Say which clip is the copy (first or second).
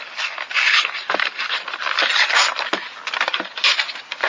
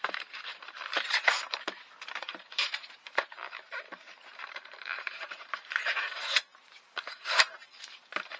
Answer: second